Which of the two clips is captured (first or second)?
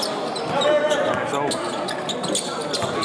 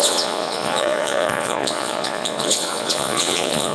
first